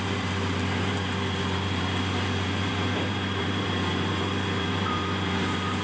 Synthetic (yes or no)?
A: yes